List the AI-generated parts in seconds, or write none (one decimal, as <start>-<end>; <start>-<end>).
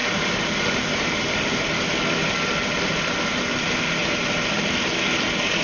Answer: none